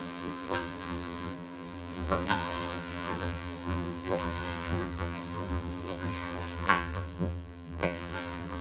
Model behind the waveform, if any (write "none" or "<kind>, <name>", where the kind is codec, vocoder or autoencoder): vocoder, BigVGAN v2